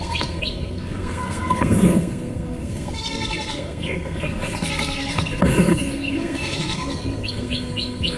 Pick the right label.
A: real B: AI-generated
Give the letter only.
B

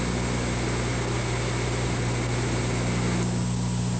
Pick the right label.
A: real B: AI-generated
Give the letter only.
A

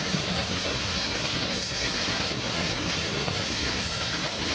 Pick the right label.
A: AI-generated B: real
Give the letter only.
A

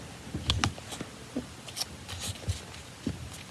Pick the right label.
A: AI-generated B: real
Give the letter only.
B